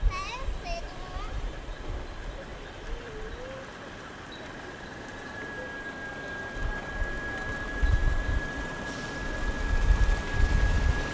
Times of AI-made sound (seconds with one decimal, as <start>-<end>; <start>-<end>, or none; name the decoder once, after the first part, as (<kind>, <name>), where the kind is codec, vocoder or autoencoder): 5.1-5.6 (vocoder, BigVGAN v2)